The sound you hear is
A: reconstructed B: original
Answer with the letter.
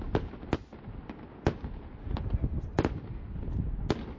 B